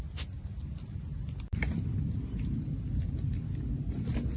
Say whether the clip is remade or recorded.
recorded